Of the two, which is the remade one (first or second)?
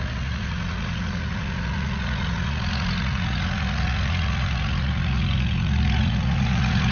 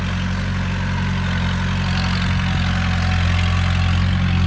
first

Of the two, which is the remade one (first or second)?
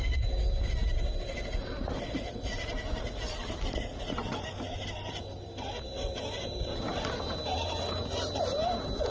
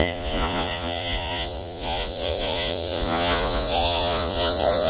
second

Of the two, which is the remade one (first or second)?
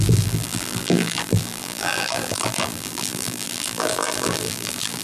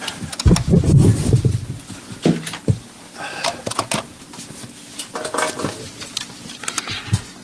first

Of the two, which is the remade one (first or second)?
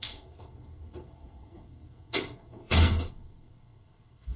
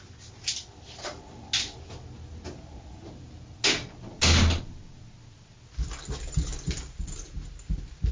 first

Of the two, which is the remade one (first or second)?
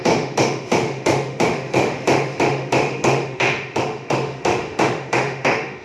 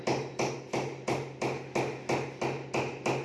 first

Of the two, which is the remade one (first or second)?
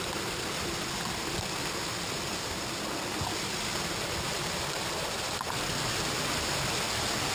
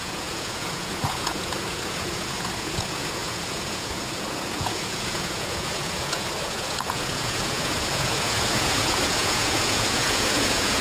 second